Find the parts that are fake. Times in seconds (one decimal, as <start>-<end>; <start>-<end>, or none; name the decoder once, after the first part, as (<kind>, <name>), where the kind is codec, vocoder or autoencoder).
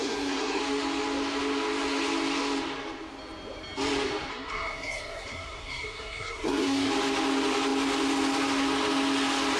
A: 0.0-0.6 (codec, SNAC); 4.3-6.9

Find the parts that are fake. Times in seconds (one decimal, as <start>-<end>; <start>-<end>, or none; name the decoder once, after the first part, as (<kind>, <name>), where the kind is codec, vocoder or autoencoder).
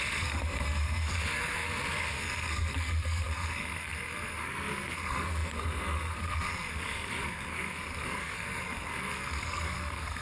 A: 0.0-10.2 (codec, SNAC)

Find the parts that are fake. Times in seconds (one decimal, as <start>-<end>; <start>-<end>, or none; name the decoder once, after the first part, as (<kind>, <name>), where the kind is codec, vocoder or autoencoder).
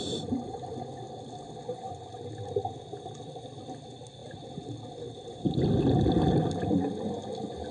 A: none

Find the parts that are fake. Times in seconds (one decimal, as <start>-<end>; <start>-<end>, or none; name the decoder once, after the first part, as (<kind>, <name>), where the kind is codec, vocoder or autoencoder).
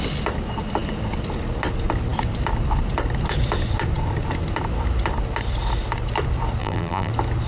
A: 6.6-7.1 (vocoder, BigVGAN v2)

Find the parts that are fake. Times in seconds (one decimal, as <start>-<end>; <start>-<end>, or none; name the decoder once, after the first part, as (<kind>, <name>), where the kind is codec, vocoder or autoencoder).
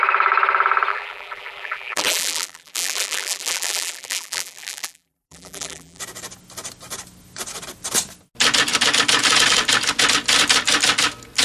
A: 0.9-6.0 (vocoder, BigVGAN v2)